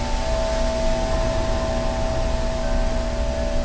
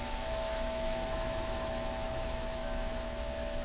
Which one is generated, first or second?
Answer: second